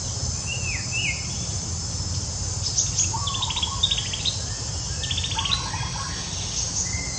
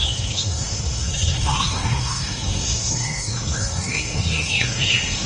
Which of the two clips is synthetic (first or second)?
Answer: second